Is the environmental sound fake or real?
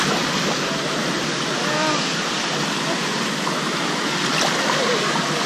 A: real